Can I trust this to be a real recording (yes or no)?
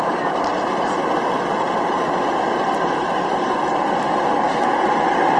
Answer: yes